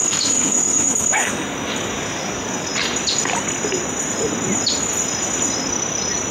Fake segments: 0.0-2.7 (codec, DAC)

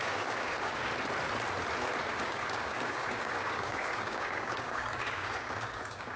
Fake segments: 0.0-0.9 (codec, DAC); 2.2-6.2